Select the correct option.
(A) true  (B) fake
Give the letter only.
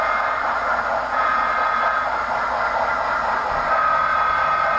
A